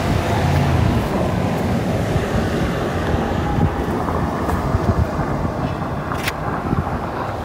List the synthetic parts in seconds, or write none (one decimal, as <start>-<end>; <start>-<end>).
0.0-3.5; 6.6-7.4